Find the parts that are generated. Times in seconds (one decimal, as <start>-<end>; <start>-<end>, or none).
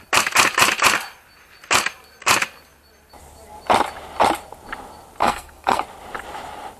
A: 5.2-5.8